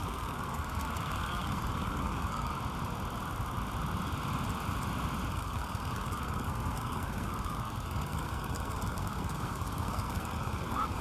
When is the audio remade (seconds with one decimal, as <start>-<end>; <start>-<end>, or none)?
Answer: 0.0-2.5; 5.3-11.0